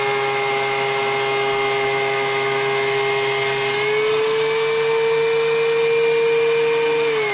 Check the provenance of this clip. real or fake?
real